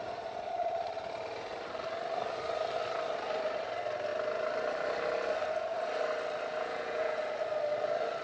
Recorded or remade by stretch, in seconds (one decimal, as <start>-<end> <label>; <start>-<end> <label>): 0.0-6.5 recorded; 6.5-7.2 remade; 7.2-8.2 recorded

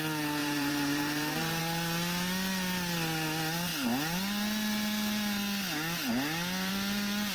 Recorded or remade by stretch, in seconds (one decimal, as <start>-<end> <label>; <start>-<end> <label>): 0.0-0.4 recorded; 0.4-1.6 remade; 1.6-7.3 recorded

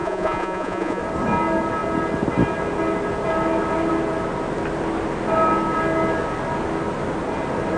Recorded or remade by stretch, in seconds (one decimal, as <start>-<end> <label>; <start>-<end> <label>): 0.0-1.0 remade; 1.0-7.8 recorded